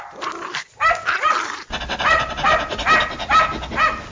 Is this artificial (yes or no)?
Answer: no